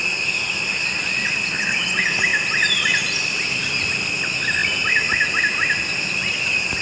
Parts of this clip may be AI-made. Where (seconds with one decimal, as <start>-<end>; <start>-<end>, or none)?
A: none